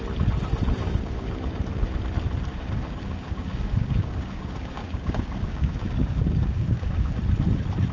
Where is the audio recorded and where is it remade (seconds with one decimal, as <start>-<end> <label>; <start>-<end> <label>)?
0.0-0.8 recorded; 0.8-1.6 remade; 1.6-2.5 recorded; 2.5-7.2 remade; 7.2-7.9 recorded